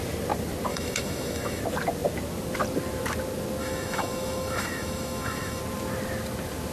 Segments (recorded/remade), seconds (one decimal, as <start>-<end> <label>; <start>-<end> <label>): 0.0-0.7 recorded; 0.7-1.6 remade; 1.6-3.6 recorded; 3.6-5.6 remade; 5.6-6.7 recorded